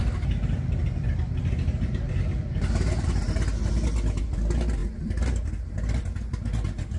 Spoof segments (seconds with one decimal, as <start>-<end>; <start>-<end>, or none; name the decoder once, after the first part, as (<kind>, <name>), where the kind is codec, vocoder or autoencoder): none